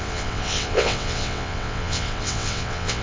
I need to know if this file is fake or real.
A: fake